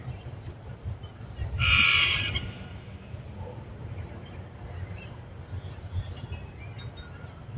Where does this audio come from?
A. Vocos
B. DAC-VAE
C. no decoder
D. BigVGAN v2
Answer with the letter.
D